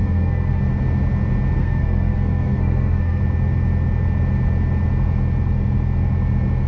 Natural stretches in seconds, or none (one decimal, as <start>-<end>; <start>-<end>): 0.6-1.6; 3.2-6.7